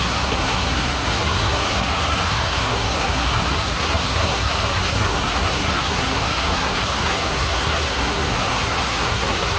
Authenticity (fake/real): fake